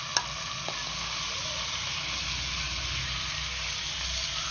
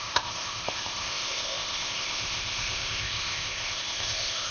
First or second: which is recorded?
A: first